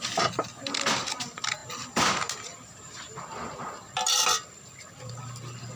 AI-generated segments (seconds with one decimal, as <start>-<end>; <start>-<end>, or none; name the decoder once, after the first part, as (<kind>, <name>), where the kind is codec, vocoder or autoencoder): none